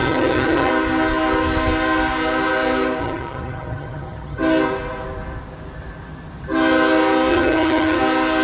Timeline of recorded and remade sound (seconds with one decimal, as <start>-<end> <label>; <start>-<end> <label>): 0.0-0.7 remade; 0.7-3.0 recorded; 3.0-4.4 remade; 4.4-7.3 recorded; 7.3-8.0 remade; 8.0-8.4 recorded